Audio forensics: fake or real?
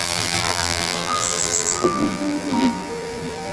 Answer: fake